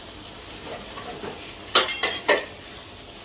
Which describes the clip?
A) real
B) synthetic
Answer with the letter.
A